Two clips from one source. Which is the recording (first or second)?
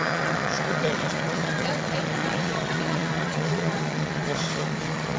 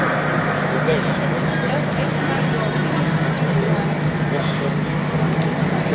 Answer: second